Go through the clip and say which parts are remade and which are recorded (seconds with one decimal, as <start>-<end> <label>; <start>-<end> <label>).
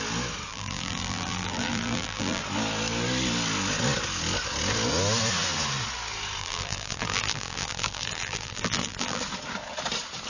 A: 0.0-0.5 recorded; 0.5-2.4 remade; 2.4-6.4 recorded; 6.4-9.2 remade; 9.2-10.3 recorded